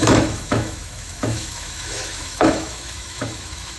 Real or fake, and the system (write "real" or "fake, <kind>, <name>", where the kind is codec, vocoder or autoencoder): fake, autoencoder, DAC-VAE